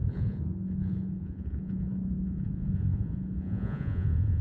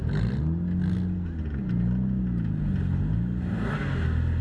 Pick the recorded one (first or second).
second